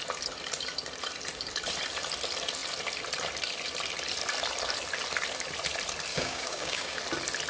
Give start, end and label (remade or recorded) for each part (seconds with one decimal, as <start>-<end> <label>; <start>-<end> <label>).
0.0-6.1 recorded; 6.1-7.0 remade; 7.0-7.5 recorded